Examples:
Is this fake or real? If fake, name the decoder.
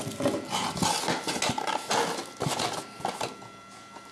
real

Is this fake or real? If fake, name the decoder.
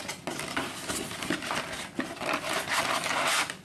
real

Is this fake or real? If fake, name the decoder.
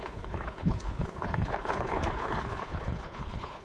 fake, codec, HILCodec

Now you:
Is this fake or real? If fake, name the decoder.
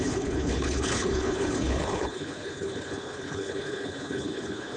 fake, codec, HILCodec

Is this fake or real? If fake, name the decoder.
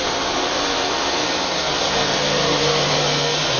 real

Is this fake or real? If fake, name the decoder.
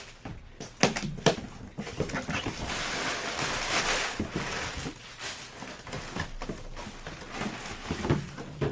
real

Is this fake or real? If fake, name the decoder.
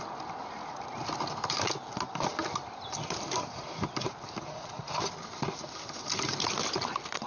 real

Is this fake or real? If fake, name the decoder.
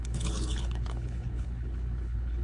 fake, codec, HILCodec